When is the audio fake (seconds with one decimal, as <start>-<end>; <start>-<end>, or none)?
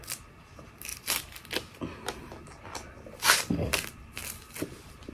none